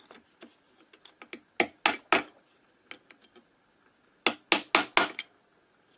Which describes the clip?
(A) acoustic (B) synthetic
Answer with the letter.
A